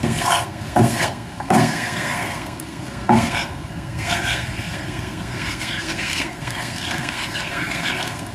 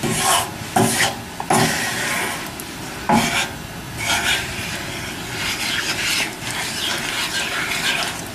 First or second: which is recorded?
second